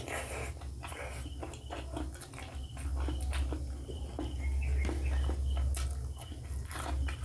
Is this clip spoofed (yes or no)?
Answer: no